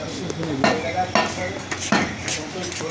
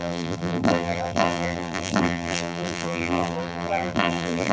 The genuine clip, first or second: first